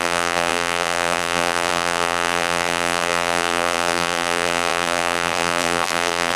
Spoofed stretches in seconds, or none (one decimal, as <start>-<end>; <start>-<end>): 0.0-6.4